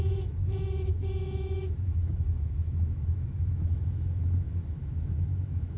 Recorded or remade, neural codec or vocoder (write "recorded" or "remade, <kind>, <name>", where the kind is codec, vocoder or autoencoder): remade, autoencoder, DAC-VAE